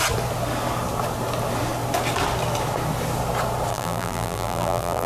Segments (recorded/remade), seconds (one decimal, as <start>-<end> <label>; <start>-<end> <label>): 0.0-3.7 recorded; 3.7-5.1 remade